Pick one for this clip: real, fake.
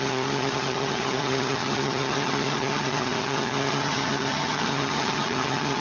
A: fake